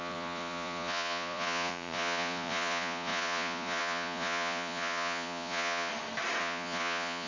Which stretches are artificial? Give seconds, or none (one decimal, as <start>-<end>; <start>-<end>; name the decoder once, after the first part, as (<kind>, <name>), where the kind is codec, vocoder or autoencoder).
0.0-5.9 (vocoder, Vocos); 6.4-7.3